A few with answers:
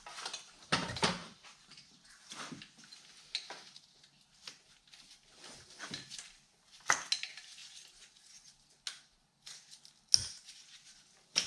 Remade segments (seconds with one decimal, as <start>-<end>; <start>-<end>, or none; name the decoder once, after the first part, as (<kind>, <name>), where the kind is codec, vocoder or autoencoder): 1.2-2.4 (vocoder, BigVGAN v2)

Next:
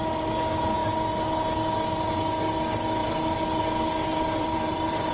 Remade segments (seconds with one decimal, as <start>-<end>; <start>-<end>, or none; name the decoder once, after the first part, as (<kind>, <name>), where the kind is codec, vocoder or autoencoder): 3.0-3.6 (vocoder, BigVGAN v2); 4.1-5.1

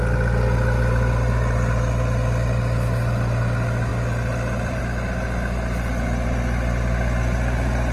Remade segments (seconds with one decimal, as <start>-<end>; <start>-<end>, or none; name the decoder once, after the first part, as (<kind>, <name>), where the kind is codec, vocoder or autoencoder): 3.9-4.8 (vocoder, BigVGAN v2)